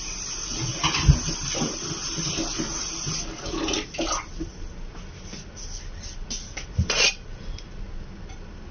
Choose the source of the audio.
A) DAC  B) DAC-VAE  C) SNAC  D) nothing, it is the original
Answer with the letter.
D